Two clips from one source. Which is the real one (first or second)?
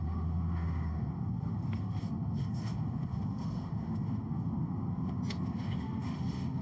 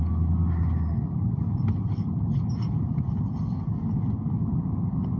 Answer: second